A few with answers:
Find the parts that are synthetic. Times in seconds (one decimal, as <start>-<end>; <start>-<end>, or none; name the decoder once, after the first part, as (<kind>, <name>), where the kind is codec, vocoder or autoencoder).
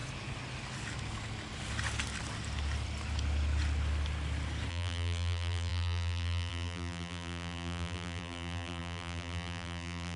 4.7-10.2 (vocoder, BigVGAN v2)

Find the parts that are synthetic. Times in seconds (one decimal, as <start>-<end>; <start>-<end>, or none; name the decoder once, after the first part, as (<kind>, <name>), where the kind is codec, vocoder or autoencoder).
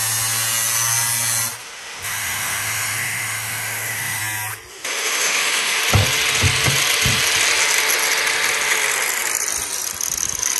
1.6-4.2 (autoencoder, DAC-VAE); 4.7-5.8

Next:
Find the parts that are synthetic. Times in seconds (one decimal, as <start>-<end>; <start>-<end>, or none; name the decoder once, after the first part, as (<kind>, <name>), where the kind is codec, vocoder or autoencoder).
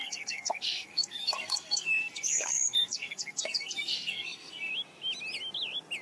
0.0-4.7 (codec, SNAC)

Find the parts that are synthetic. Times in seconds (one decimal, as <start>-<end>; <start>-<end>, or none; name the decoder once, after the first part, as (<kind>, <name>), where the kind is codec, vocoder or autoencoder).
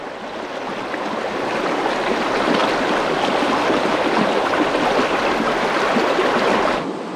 none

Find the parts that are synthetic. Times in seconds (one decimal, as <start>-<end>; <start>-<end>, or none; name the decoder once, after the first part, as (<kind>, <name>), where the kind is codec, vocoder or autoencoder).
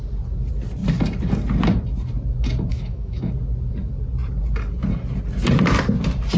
2.7-3.3 (autoencoder, DAC-VAE)